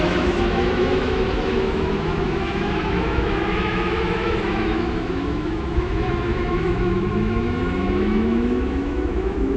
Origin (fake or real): fake